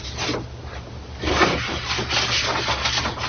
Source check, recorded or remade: recorded